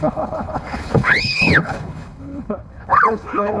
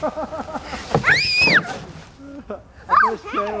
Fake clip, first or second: first